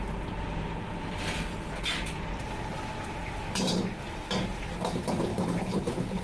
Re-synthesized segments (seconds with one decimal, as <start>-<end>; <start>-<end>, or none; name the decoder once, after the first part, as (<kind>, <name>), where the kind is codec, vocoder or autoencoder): 5.3-6.2 (codec, HILCodec)